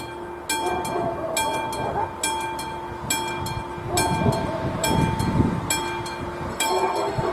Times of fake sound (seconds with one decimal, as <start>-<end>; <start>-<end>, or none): 6.5-7.3